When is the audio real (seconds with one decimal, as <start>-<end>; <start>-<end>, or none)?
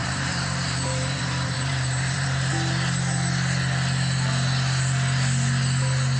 2.5-6.2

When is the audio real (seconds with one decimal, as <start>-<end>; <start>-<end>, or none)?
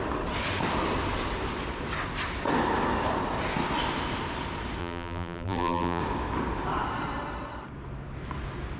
0.0-4.8; 6.0-8.8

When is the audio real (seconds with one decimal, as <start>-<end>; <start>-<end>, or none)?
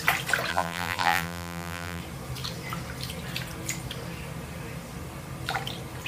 0.0-0.5; 2.0-6.1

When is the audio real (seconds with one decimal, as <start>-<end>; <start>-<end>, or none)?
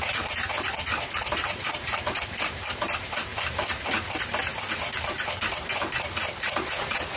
3.3-5.0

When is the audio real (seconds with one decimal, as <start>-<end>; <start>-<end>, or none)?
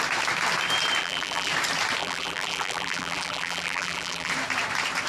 0.0-1.0; 1.5-2.0; 4.3-5.1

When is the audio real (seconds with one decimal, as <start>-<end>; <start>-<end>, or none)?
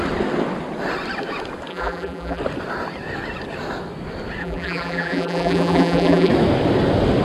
0.0-1.7; 2.4-4.4; 6.3-7.2